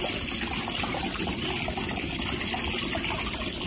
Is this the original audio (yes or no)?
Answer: yes